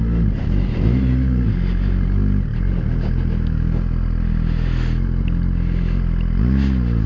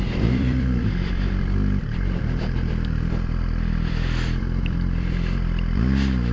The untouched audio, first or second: first